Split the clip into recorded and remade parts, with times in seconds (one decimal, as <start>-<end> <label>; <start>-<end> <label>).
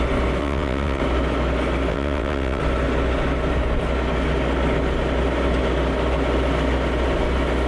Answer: 0.0-0.4 recorded; 0.4-1.0 remade; 1.0-1.9 recorded; 1.9-2.6 remade; 2.6-7.7 recorded